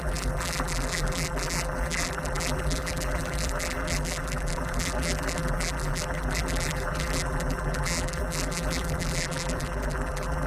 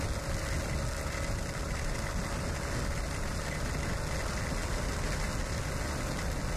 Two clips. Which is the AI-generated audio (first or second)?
first